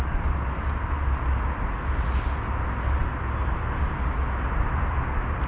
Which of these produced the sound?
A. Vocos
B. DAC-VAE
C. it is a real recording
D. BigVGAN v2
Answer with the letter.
C